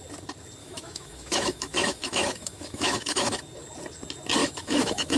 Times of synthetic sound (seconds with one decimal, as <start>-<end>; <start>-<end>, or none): 0.6-3.4; 4.4-5.2